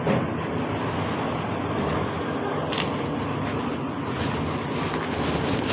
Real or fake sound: real